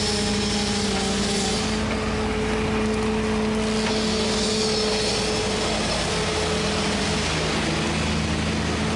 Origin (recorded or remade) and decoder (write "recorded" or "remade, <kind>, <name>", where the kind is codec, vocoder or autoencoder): recorded